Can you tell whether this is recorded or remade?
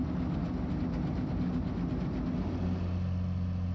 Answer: recorded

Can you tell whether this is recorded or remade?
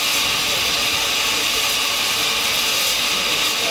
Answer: recorded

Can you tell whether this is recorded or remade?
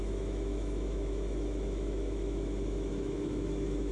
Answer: remade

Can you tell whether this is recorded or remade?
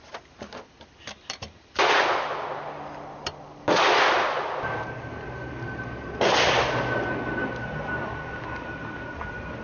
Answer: recorded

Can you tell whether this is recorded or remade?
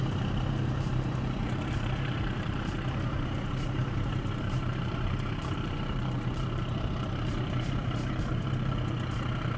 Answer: remade